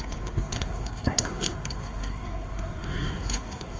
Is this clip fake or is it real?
fake